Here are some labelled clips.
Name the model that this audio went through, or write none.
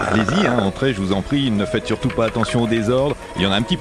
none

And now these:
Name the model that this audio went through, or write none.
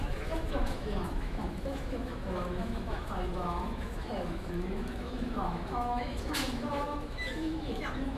autoencoder, DAC-VAE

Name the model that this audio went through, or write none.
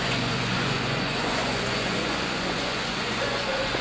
vocoder, Vocos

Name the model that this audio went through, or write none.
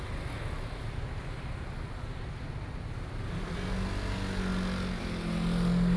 none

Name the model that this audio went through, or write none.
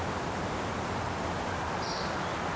none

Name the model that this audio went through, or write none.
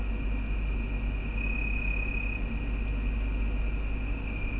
none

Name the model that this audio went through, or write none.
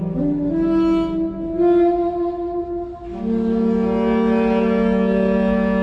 none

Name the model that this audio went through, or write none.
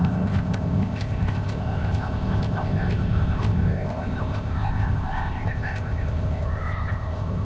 codec, ZipCodec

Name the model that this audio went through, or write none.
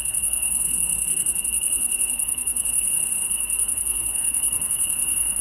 codec, SNAC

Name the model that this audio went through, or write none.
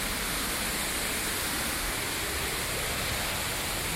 none